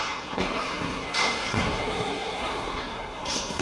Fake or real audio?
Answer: fake